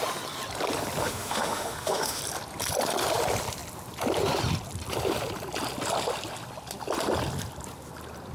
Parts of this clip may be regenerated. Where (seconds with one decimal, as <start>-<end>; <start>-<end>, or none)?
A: 1.0-2.2